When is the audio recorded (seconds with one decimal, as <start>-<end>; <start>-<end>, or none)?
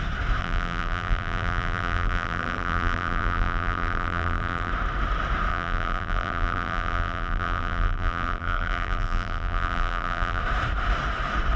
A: 0.0-0.4; 4.7-5.5; 10.4-11.6